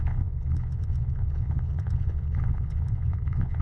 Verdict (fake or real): fake